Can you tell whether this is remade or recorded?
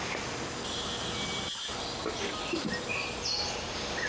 recorded